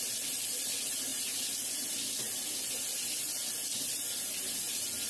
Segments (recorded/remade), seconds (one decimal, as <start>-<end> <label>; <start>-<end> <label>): 0.0-5.1 recorded